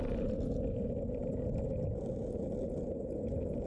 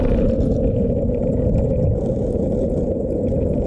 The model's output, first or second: second